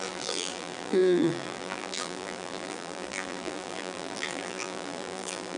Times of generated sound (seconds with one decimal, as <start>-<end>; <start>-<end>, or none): 0.0-5.6